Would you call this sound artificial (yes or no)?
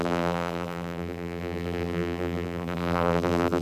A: yes